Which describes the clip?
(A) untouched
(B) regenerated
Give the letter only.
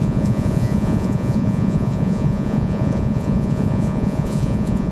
B